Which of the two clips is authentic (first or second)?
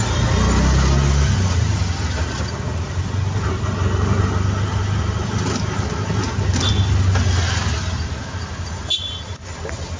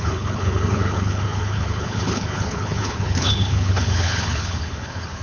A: first